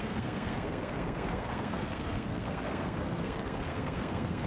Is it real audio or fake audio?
fake